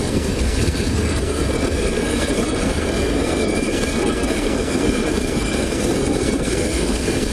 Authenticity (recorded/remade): remade